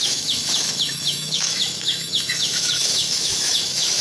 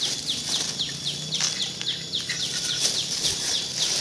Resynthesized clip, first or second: first